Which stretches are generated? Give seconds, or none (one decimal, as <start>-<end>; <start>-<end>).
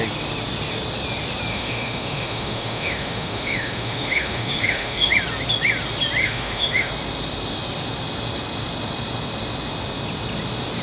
1.5-5.1; 6.2-6.9